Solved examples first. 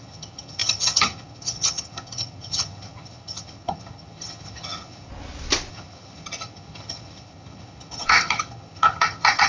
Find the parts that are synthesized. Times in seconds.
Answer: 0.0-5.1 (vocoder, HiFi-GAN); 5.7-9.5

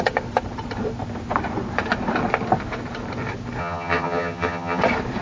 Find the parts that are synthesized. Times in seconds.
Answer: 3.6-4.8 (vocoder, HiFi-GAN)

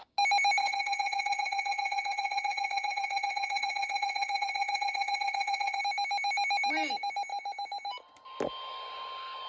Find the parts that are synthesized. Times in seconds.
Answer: 0.6-5.8 (vocoder, HiFi-GAN)

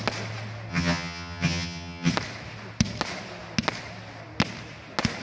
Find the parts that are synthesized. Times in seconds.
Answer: 0.7-2.1 (vocoder, HiFi-GAN)

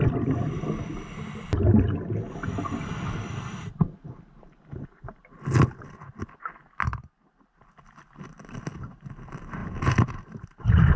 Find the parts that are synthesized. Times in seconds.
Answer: none

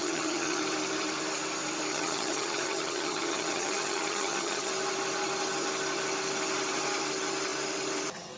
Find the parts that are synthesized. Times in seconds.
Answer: 0.0-0.6 (vocoder, HiFi-GAN); 1.9-4.7

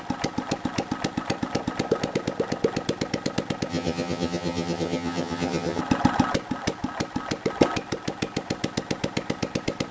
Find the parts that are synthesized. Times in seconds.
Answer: 3.7-5.8 (vocoder, HiFi-GAN)

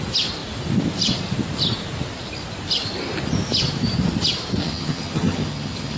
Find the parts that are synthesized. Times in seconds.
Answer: 4.6-6.0 (vocoder, HiFi-GAN)